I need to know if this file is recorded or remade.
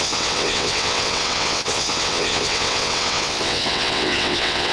remade